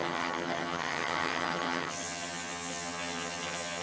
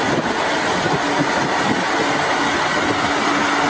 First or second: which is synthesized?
first